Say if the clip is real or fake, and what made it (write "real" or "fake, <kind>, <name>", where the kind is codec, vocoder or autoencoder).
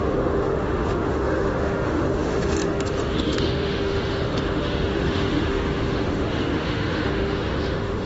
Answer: fake, autoencoder, DAC-VAE